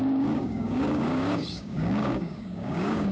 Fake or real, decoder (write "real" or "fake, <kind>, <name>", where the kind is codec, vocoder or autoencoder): fake, codec, DAC